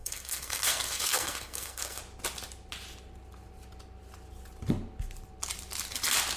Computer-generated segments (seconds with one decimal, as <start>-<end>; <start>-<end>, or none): 0.0-2.0